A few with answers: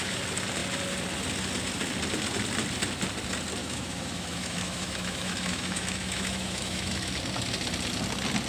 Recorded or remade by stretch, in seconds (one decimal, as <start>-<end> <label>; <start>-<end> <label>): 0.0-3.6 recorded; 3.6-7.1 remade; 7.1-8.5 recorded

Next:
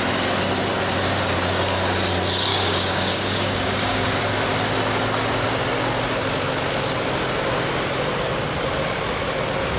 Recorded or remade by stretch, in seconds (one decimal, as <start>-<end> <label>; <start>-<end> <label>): 0.0-2.5 recorded; 2.5-4.1 remade; 4.1-9.8 recorded

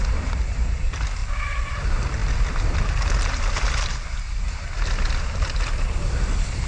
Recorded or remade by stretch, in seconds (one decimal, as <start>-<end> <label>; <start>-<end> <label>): 0.0-6.7 recorded

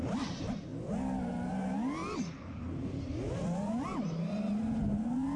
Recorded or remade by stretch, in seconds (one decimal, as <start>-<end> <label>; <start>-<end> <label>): 0.0-5.4 recorded

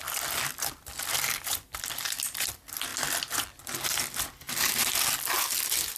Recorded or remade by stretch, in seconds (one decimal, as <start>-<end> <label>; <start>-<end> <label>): 0.0-6.0 recorded

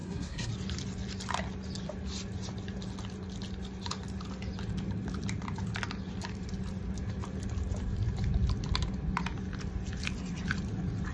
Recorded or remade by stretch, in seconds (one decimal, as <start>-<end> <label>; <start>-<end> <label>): 0.0-0.5 remade; 0.5-11.1 recorded

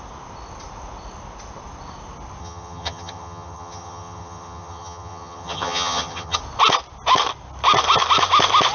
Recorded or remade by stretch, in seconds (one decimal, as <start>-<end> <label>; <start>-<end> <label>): 0.0-2.4 recorded; 2.4-6.4 remade; 6.4-8.7 recorded

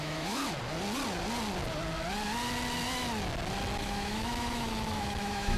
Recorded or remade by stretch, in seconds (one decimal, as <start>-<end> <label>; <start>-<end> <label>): 0.0-0.4 remade; 0.4-3.8 recorded; 3.8-5.6 remade